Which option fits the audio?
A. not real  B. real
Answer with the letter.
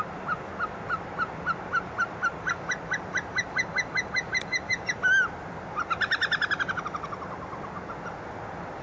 B